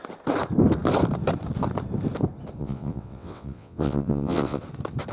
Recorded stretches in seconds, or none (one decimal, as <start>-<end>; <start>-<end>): 0.0-2.6; 4.6-5.1